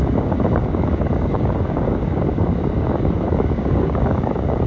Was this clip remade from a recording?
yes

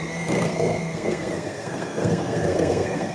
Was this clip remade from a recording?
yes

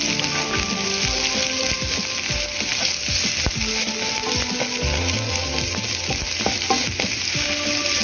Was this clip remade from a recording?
no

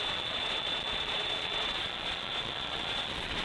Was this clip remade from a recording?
yes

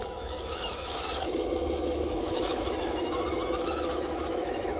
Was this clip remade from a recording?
yes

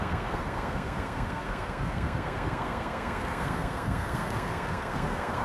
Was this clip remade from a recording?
yes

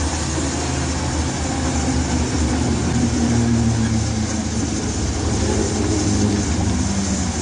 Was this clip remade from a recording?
no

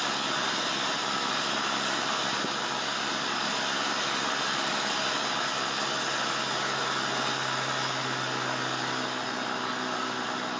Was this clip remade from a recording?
no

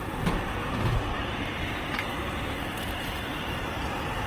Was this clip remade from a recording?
no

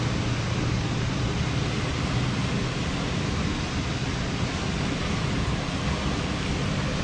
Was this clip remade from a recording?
no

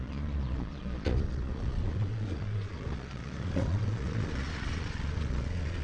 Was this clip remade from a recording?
yes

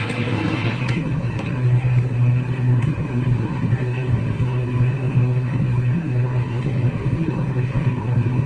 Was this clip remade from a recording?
yes